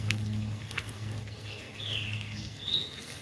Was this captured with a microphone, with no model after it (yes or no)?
no